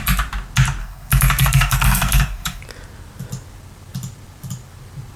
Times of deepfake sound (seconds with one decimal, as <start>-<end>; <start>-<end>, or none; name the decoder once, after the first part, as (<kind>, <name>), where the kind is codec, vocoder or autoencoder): 0.8-2.6 (codec, SNAC)